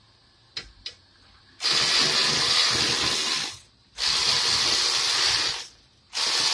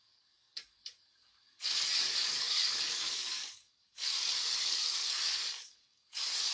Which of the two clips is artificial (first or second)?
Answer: second